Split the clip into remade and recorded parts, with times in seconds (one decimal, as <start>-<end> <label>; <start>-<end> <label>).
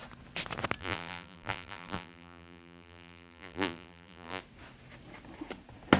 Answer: 0.0-0.8 recorded; 0.8-4.4 remade; 4.4-6.0 recorded